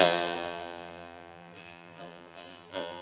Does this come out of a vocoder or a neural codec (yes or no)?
yes